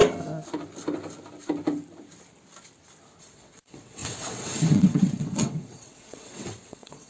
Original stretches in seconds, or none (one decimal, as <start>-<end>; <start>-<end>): 0.0-3.2